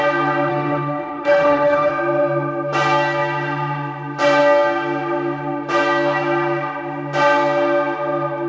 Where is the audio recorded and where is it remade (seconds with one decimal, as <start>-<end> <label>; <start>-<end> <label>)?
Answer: 0.0-0.5 recorded; 0.5-1.9 remade; 1.9-8.5 recorded